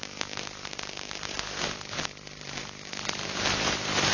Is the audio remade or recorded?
remade